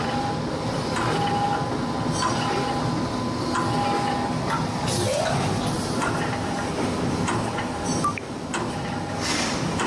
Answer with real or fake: real